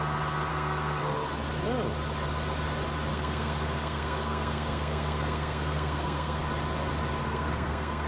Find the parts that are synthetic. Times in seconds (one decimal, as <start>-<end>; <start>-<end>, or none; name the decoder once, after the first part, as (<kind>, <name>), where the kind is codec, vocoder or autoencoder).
0.5-1.0 (codec, SNAC); 3.1-6.4; 7.2-8.1